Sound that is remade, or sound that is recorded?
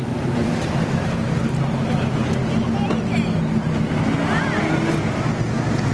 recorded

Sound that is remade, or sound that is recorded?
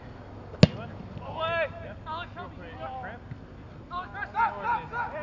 recorded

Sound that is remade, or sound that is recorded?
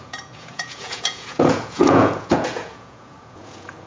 remade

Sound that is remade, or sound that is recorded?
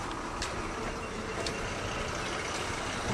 recorded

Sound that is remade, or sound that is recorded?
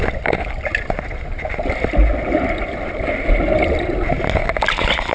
recorded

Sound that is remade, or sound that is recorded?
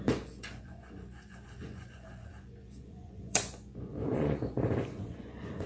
remade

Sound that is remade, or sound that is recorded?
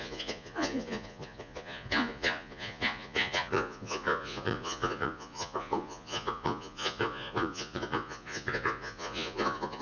remade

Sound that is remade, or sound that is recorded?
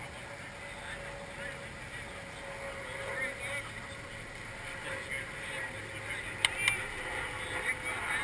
recorded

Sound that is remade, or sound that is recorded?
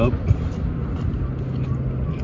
recorded